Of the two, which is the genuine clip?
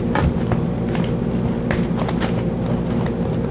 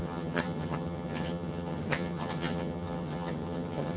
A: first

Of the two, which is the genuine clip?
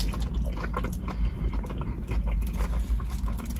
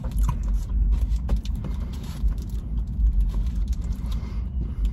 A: first